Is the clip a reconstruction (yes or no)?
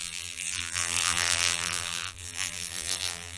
yes